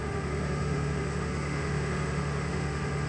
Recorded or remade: remade